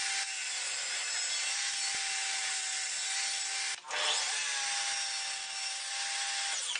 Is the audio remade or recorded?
recorded